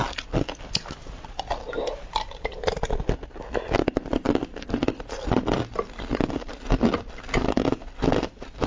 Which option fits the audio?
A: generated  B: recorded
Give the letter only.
B